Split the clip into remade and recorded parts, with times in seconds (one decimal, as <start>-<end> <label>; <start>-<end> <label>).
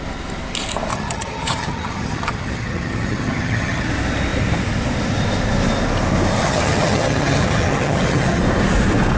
0.0-0.9 recorded; 0.9-3.9 remade; 3.9-6.4 recorded; 6.4-8.4 remade; 8.4-9.2 recorded